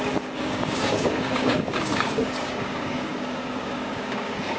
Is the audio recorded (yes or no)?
no